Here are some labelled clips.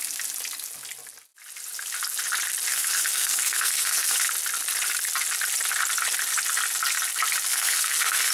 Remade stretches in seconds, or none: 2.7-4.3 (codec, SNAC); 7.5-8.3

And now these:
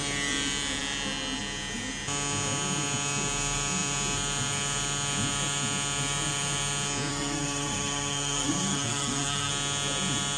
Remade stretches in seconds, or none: 7.1-9.5 (codec, SNAC)

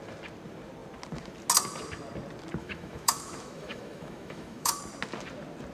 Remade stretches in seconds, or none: 2.6-4.8 (autoencoder, DAC-VAE)

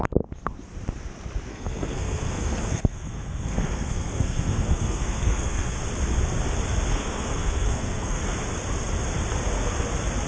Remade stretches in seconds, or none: 1.5-5.8 (codec, SNAC); 6.9-8.2